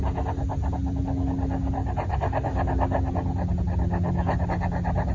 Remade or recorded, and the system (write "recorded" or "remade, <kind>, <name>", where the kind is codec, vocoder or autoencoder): recorded